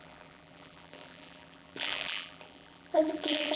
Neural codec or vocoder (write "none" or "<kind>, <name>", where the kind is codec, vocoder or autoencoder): vocoder, BigVGAN v2